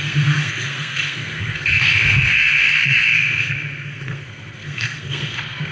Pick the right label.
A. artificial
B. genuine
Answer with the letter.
A